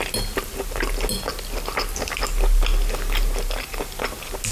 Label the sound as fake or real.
real